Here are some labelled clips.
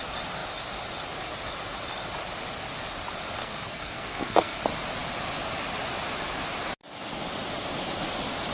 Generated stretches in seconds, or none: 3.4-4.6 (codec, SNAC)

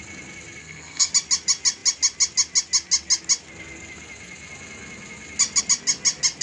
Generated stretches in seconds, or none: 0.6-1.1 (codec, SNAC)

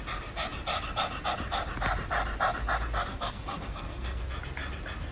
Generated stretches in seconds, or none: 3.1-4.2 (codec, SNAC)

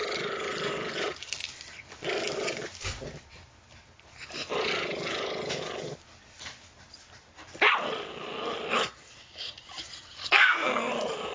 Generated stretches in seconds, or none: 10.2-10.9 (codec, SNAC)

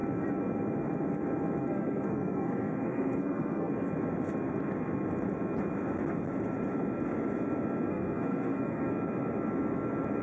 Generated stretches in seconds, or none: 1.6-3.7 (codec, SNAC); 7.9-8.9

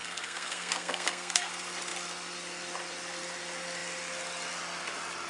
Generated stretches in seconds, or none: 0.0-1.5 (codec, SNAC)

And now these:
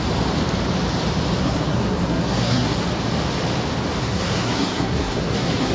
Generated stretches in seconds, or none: 1.4-2.8 (codec, SNAC); 4.0-5.7

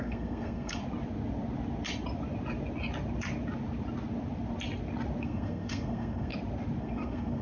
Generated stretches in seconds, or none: 0.0-0.8 (codec, SNAC); 5.2-6.3; 6.8-7.4